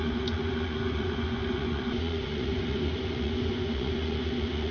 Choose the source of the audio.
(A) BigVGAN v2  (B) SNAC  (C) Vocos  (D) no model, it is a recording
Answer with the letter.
C